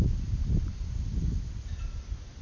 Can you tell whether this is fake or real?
real